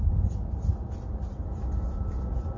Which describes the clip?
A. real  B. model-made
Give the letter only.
A